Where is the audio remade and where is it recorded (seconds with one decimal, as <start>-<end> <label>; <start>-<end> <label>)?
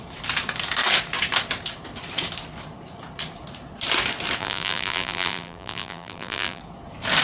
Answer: 0.0-4.4 recorded; 4.4-6.6 remade; 6.6-7.2 recorded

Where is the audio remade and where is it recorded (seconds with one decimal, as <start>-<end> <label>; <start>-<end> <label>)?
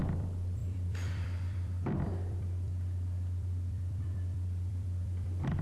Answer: 0.0-5.6 remade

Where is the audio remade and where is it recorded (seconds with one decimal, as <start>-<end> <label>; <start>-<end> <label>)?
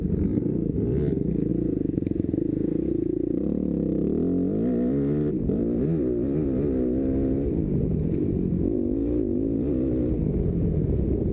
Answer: 0.0-11.3 recorded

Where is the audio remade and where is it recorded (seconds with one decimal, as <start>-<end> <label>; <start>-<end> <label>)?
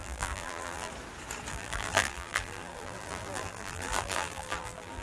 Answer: 0.0-0.9 remade; 0.9-1.5 recorded; 1.5-5.0 remade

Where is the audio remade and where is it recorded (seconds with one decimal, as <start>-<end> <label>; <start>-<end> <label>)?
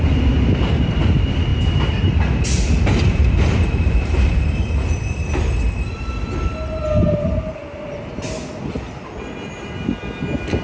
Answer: 0.0-1.5 recorded; 1.5-2.1 remade; 2.1-3.0 recorded; 3.0-5.2 remade; 5.2-10.6 recorded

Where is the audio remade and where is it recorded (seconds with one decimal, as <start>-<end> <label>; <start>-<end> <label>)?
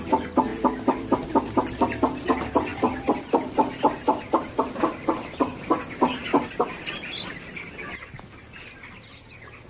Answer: 0.0-0.5 recorded; 0.5-2.0 remade; 2.0-2.7 recorded; 2.7-4.8 remade; 4.8-6.2 recorded; 6.2-7.3 remade; 7.3-9.7 recorded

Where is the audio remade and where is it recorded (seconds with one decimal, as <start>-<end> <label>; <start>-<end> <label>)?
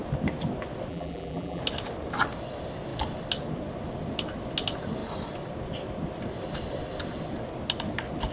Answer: 0.0-0.9 recorded; 0.9-1.6 remade; 1.6-8.3 recorded